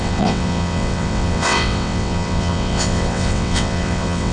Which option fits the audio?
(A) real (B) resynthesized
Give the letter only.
B